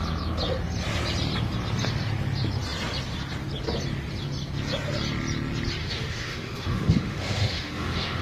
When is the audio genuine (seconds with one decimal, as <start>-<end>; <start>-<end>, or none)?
0.0-5.8